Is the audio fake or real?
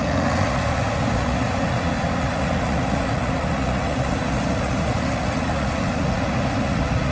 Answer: fake